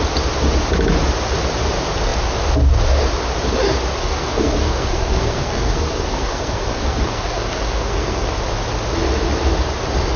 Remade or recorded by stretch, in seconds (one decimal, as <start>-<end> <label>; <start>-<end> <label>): 0.0-4.0 recorded; 4.0-8.3 remade; 8.3-10.2 recorded